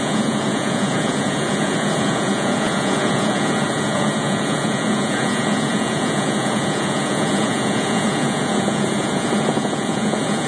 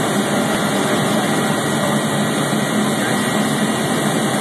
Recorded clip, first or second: second